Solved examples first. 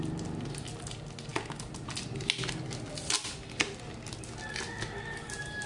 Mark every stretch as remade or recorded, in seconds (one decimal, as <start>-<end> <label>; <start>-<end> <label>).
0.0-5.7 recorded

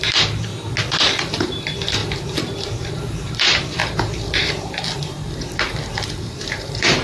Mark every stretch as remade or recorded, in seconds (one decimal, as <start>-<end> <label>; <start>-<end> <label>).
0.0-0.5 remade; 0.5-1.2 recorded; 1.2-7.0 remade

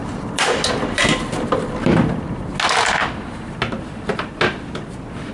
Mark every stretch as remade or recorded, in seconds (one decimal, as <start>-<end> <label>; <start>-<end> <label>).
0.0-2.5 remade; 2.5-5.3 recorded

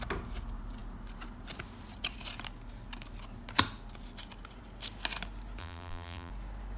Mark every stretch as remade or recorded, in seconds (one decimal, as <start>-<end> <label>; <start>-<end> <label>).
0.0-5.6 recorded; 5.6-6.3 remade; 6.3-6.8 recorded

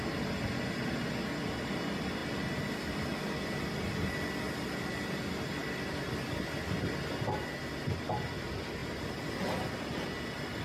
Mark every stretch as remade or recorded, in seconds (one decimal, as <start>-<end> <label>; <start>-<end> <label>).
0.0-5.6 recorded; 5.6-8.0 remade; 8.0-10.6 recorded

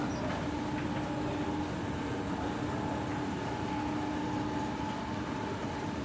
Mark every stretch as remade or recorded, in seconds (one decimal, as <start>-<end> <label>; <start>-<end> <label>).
0.0-6.0 recorded

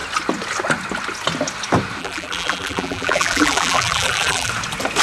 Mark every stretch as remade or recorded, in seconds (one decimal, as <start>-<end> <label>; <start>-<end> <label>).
0.0-2.0 recorded; 2.0-4.5 remade; 4.5-5.0 recorded

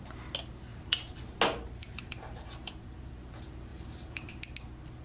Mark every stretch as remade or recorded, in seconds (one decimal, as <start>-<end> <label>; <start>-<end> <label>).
0.0-0.7 recorded; 0.7-1.2 remade; 1.2-1.8 recorded; 1.8-3.1 remade; 3.1-3.7 recorded; 3.7-4.3 remade; 4.3-5.0 recorded